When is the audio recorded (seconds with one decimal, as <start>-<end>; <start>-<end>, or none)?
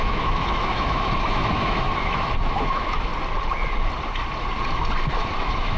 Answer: 3.1-5.1